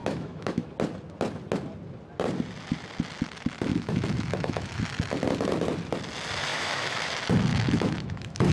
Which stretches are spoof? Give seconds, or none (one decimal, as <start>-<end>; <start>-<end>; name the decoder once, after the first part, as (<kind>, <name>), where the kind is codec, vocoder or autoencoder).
0.0-0.7 (autoencoder, DAC-VAE); 3.7-4.8; 6.5-7.1; 7.5-8.5